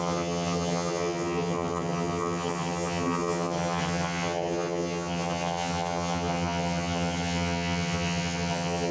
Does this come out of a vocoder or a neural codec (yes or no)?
yes